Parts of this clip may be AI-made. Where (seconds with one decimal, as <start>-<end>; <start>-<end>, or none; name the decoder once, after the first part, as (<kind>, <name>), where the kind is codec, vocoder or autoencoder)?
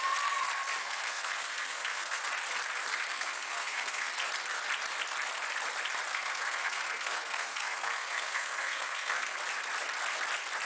0.8-2.2 (codec, SNAC); 3.1-4.1; 6.1-9.4